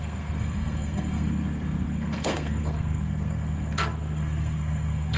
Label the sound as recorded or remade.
remade